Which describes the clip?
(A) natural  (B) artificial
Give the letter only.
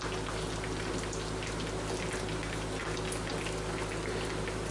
A